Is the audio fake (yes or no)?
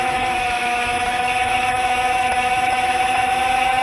yes